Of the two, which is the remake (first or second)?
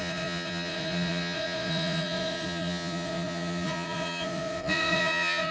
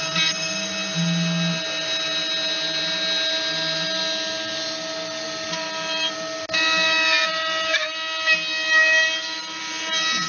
first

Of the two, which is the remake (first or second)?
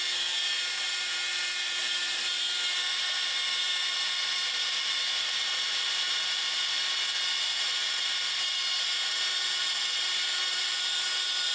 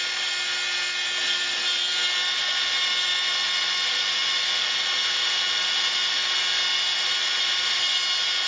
first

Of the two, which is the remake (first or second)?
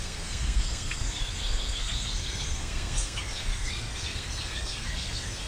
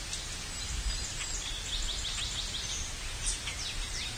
first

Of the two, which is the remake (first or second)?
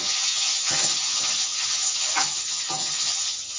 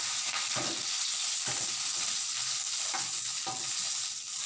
first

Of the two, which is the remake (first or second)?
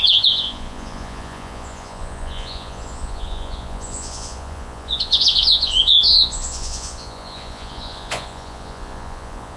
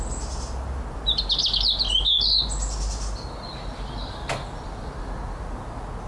first